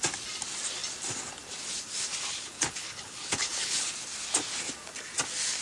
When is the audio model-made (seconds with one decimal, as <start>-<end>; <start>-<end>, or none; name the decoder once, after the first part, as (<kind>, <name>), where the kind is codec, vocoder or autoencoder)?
2.3-3.9 (codec, HILCodec)